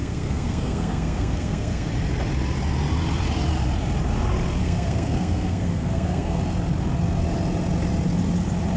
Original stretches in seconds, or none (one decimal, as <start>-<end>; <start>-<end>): 1.9-4.6; 6.4-8.8